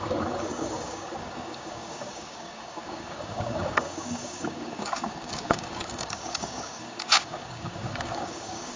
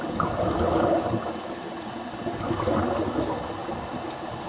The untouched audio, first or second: second